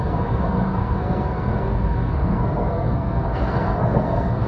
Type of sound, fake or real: fake